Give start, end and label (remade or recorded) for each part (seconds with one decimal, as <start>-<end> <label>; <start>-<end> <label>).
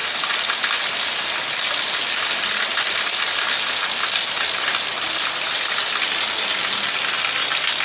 0.0-7.8 recorded